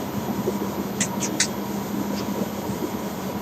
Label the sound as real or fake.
real